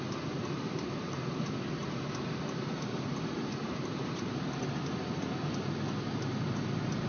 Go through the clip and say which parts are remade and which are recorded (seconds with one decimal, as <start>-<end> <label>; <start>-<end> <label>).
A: 0.0-0.4 recorded; 0.4-1.3 remade; 1.3-3.6 recorded; 3.6-4.6 remade; 4.6-7.1 recorded